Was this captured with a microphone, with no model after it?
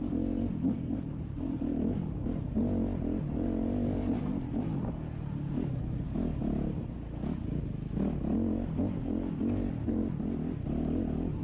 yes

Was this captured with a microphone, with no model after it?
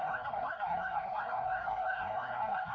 no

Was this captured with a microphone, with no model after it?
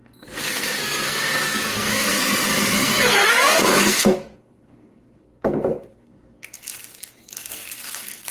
no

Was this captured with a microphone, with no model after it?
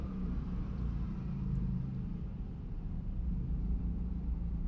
no